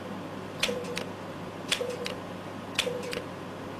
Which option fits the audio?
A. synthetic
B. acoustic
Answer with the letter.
B